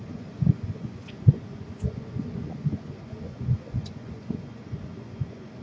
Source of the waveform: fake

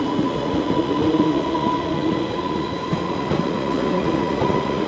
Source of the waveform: fake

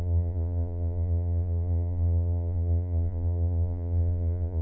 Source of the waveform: fake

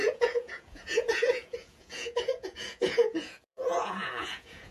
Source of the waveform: fake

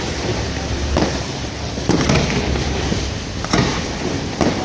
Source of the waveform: real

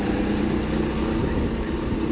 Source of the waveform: real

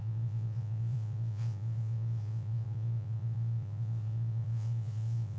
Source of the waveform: fake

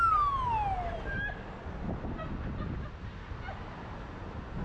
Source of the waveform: real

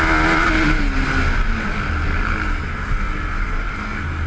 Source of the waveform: real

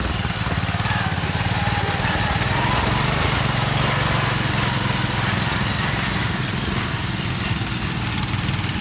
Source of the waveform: real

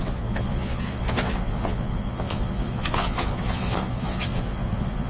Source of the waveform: fake